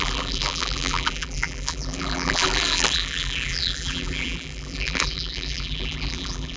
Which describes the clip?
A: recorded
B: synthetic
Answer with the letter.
B